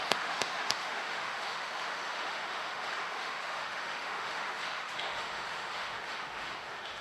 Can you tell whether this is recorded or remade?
remade